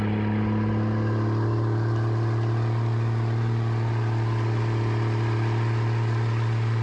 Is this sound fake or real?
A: real